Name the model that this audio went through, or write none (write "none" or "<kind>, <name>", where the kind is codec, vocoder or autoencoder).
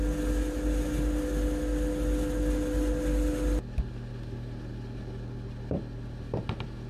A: none